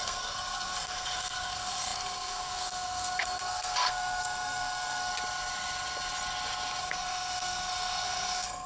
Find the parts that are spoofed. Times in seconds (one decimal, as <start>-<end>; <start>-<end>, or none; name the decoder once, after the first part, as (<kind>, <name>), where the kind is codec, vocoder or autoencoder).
0.0-5.1 (codec, SNAC); 6.8-8.7